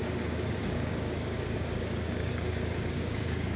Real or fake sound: fake